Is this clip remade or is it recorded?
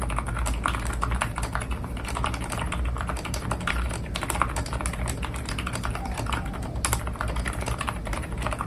recorded